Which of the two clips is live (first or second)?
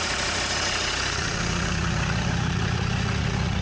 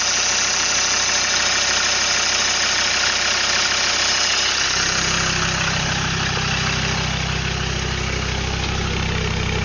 second